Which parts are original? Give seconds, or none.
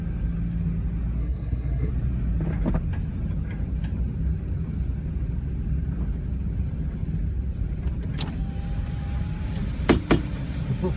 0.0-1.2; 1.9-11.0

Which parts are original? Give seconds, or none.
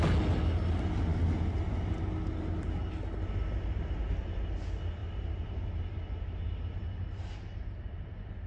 0.0-8.5